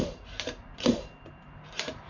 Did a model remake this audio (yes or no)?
yes